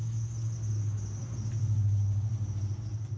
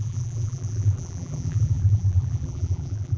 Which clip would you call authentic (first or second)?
first